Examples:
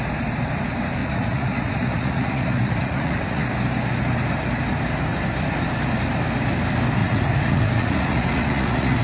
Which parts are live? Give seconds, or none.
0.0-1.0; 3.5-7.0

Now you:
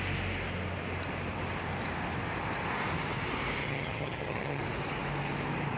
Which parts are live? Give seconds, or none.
0.0-3.6; 4.6-5.8

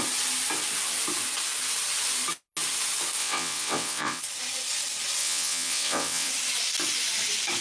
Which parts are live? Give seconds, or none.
0.0-3.2; 4.2-5.2; 6.3-7.6

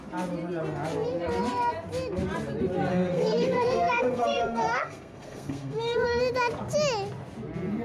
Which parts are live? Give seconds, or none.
0.0-2.9; 6.2-7.8

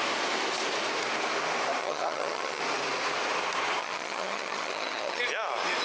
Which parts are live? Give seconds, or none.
0.0-1.8; 2.6-3.8; 5.2-5.8

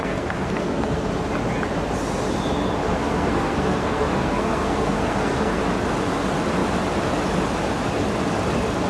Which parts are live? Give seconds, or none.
1.1-2.8; 5.6-8.9

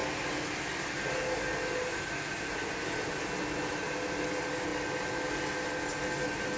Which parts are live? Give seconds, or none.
0.0-6.6

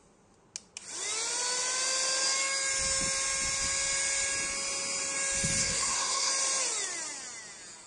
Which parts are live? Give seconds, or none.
0.0-5.6; 6.3-7.9